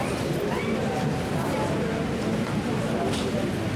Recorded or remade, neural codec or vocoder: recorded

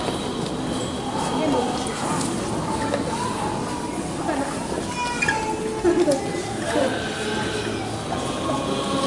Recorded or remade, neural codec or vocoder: recorded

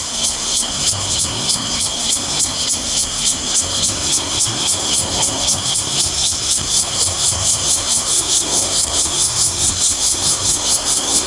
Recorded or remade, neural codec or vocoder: remade, codec, SNAC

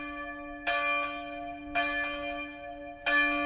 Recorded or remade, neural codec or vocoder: recorded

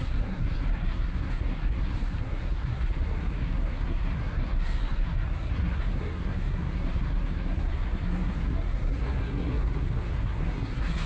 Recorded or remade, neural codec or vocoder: remade, codec, SNAC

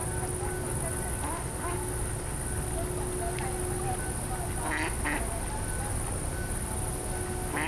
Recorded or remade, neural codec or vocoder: recorded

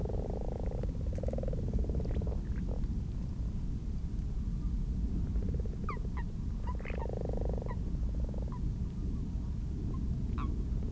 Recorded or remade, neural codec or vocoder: recorded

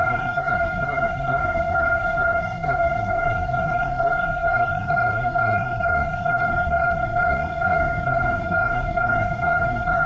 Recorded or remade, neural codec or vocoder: remade, codec, SNAC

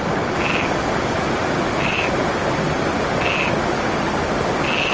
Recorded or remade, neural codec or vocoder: recorded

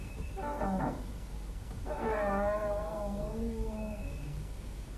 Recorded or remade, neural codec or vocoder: remade, codec, SNAC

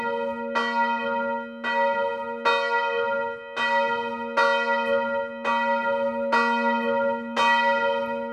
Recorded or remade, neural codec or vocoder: recorded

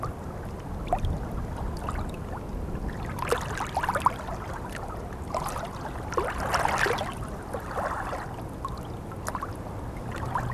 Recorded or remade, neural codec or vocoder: recorded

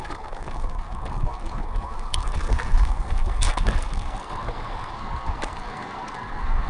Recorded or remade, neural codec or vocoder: remade, codec, SNAC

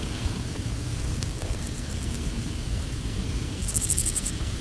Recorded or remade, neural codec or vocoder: remade, codec, SNAC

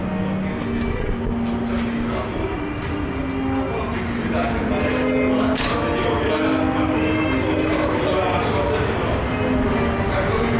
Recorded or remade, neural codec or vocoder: recorded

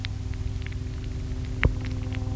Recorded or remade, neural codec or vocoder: recorded